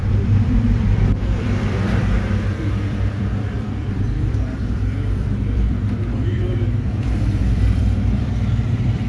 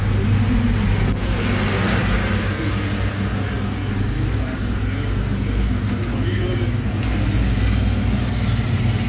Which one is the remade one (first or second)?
first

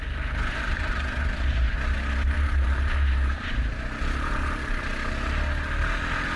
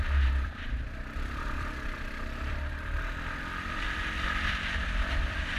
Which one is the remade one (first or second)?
second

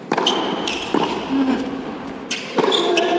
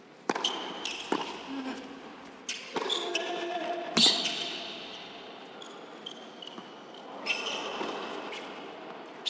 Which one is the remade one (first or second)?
first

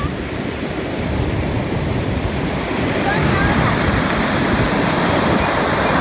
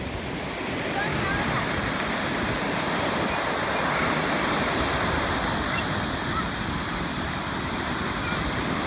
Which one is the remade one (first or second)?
first